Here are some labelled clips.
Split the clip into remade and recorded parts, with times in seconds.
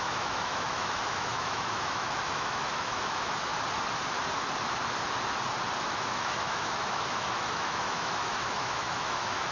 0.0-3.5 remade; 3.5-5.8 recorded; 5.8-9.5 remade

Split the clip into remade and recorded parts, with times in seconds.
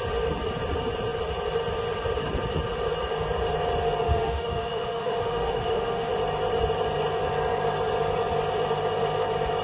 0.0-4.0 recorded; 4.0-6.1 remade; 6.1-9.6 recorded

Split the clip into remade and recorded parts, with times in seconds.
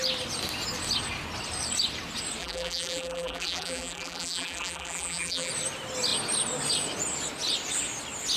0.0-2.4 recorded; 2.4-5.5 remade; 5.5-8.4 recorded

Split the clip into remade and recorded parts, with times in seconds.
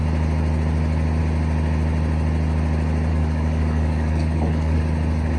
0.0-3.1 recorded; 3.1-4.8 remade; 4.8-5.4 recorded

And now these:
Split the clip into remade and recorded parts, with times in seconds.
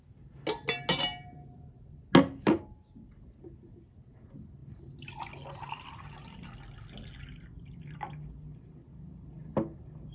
0.0-10.1 recorded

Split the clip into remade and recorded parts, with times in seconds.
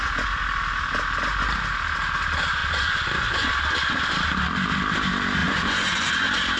0.0-2.6 recorded; 2.6-3.5 remade; 3.5-5.4 recorded; 5.4-6.1 remade; 6.1-6.6 recorded